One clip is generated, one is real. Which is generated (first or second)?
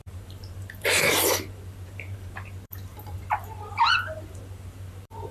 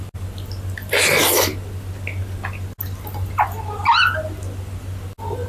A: first